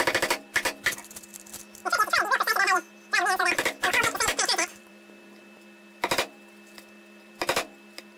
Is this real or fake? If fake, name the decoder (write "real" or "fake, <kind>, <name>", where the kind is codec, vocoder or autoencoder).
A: fake, vocoder, BigVGAN v2